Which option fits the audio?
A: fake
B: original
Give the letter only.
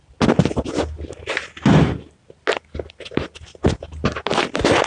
B